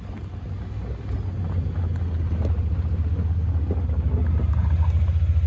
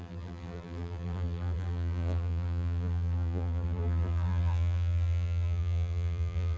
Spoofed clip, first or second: second